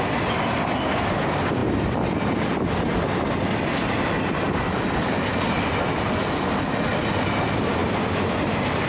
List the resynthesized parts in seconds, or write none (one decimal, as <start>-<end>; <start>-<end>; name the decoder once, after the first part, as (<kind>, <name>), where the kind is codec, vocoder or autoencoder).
none